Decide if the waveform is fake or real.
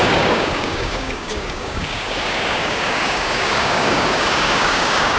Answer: fake